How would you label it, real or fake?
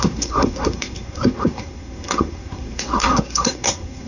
fake